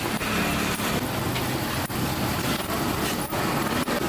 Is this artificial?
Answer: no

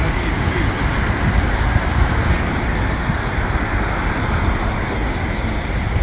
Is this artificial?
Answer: no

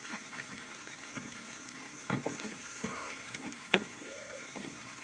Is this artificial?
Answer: yes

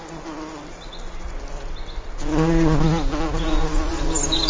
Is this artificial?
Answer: no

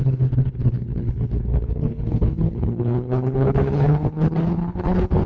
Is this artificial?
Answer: yes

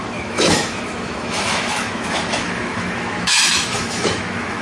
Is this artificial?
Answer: yes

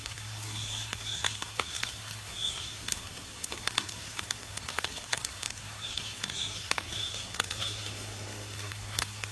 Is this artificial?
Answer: yes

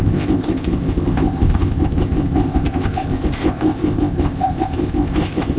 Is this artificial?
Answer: yes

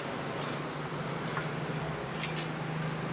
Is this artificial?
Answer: no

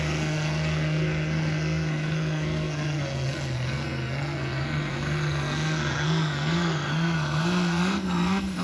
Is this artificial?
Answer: yes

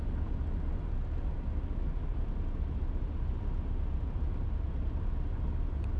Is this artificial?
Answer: no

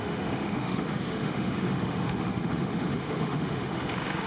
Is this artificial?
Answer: yes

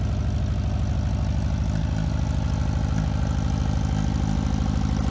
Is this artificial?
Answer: no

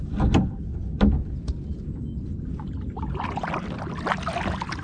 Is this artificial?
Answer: no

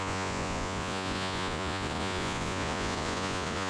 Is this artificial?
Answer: yes